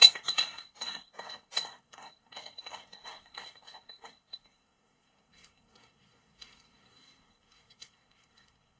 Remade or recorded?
remade